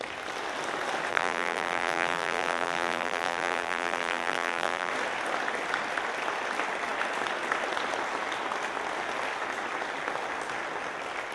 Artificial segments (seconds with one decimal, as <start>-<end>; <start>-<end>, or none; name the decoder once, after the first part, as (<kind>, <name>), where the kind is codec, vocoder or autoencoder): 1.1-4.9 (vocoder, BigVGAN v2)